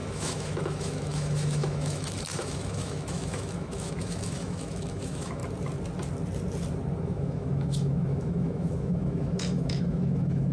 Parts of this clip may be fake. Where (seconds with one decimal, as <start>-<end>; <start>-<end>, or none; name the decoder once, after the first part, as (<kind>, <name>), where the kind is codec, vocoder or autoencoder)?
0.0-5.4 (autoencoder, DAC-VAE); 7.0-10.5